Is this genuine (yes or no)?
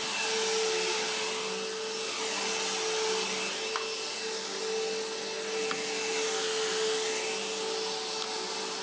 yes